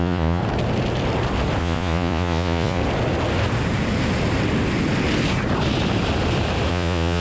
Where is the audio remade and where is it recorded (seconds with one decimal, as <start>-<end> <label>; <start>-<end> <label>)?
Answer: 0.0-0.4 remade; 0.4-1.6 recorded; 1.6-2.8 remade; 2.8-6.7 recorded; 6.7-7.2 remade